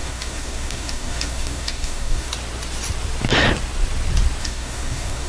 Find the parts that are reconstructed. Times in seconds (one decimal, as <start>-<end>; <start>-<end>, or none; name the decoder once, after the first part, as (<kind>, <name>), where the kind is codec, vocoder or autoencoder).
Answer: 0.0-2.3 (codec, DAC); 4.4-5.3

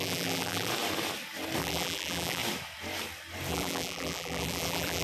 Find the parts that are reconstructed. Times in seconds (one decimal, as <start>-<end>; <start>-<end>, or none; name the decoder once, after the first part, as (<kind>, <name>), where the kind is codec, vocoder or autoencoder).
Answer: 0.0-0.7 (vocoder, BigVGAN v2); 1.6-2.4; 3.5-5.0

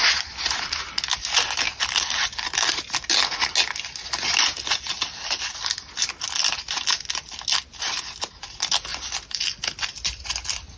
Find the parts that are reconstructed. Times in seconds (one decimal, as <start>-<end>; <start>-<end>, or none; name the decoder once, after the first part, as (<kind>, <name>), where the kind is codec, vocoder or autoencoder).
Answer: 0.0-2.8 (vocoder, BigVGAN v2); 8.9-9.5

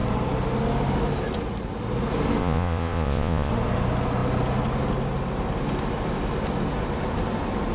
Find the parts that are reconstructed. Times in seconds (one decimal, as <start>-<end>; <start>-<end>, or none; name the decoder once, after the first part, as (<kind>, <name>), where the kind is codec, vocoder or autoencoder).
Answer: 2.4-3.5 (vocoder, Vocos)